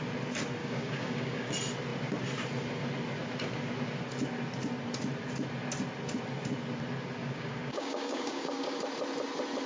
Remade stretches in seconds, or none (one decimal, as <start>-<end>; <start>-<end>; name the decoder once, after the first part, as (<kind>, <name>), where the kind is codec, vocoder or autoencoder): 0.6-1.5 (codec, DAC); 7.2-8.8

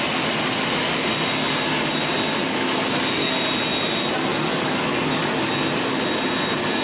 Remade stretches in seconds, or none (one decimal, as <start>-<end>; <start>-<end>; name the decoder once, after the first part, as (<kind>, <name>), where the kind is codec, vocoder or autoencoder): 2.4-3.3 (codec, DAC); 4.3-5.5

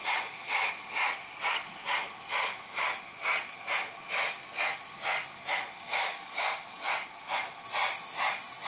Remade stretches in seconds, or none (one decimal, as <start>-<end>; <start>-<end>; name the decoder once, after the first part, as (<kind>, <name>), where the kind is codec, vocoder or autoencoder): 6.0-6.9 (codec, DAC)

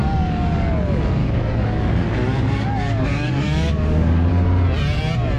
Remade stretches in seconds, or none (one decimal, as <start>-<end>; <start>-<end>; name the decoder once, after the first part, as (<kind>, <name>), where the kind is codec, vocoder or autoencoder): 0.0-0.7 (codec, DAC); 1.2-4.3

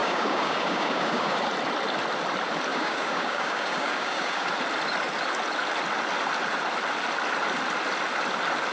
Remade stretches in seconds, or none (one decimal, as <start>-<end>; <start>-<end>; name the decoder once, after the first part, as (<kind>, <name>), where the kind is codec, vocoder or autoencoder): 0.0-1.4 (codec, DAC); 2.7-4.5

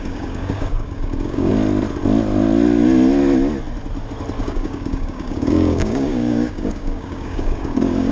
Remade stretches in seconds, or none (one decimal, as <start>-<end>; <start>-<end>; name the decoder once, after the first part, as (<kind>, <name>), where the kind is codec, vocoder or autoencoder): 0.0-1.5 (codec, DAC); 4.4-8.1

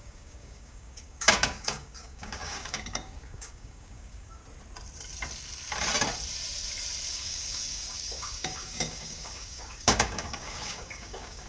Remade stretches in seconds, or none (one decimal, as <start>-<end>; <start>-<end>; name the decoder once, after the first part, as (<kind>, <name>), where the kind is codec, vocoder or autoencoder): 0.0-4.4 (codec, DAC); 7.1-11.5

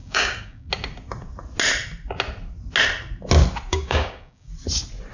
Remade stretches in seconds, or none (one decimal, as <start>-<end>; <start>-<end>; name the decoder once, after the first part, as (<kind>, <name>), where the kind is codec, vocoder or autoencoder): 0.0-0.7 (codec, DAC); 3.7-4.5